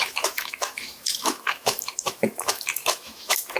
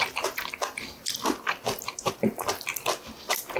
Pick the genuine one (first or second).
second